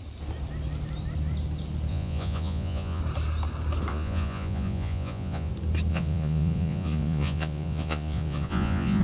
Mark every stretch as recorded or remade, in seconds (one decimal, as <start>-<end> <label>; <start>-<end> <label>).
0.0-1.9 recorded; 1.9-3.0 remade; 3.0-3.9 recorded; 3.9-5.5 remade; 5.5-5.9 recorded; 5.9-9.0 remade

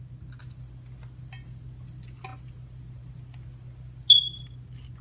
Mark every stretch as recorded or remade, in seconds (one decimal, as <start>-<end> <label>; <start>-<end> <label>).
0.0-5.0 recorded

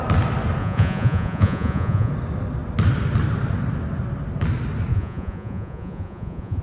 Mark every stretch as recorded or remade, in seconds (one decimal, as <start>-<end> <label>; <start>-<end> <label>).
0.0-0.6 recorded; 0.6-2.1 remade; 2.1-4.9 recorded; 4.9-6.6 remade

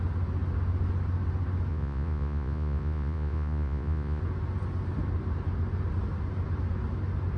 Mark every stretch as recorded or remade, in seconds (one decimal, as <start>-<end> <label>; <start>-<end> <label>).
0.0-1.7 recorded; 1.7-4.2 remade; 4.2-7.4 recorded

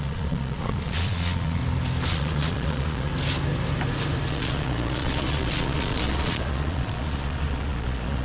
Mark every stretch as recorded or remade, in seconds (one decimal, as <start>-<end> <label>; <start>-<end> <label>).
0.0-1.6 remade; 1.6-2.1 recorded; 2.1-3.1 remade; 3.1-4.3 recorded; 4.3-8.2 remade

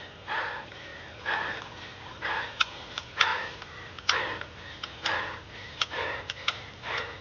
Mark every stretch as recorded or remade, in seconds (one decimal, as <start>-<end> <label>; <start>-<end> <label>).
0.0-7.2 recorded

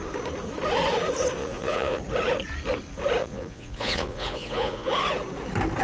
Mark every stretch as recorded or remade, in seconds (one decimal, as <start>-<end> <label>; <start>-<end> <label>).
0.0-1.4 recorded; 1.4-2.0 remade; 2.0-3.2 recorded; 3.2-4.9 remade; 4.9-5.8 recorded